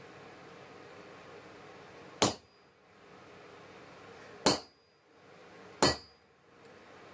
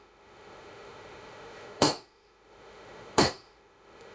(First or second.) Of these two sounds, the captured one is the first